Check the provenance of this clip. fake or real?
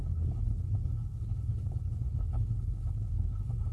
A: fake